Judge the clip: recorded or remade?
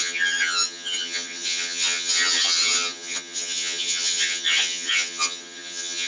remade